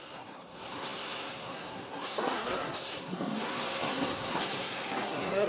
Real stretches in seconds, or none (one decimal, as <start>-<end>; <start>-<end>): none